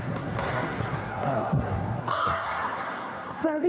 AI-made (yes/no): yes